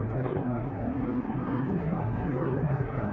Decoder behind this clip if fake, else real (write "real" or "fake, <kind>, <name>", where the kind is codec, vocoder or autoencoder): fake, codec, SNAC